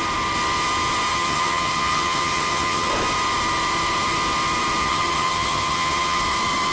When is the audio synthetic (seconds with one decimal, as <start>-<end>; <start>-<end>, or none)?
1.1-2.9; 4.8-6.2